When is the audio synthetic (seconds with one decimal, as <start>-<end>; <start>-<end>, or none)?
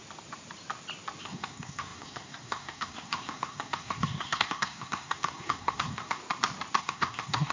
1.2-6.2; 6.8-7.5